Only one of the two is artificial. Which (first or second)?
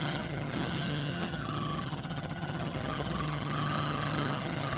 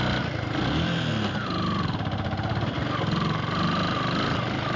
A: first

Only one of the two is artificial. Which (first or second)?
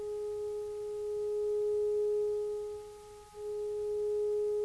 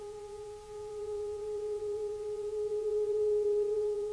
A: second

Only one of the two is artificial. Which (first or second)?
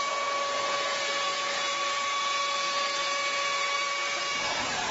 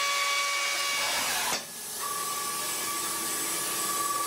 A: first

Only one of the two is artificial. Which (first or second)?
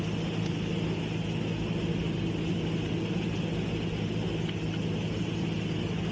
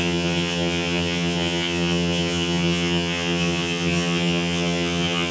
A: second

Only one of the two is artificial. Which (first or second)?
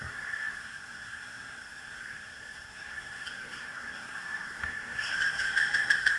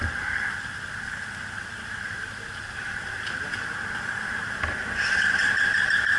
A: first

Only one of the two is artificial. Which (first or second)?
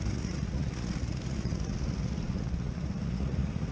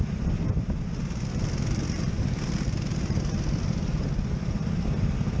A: first